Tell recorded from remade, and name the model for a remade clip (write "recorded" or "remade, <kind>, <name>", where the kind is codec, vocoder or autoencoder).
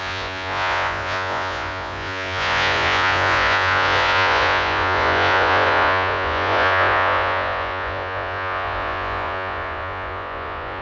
remade, vocoder, Vocos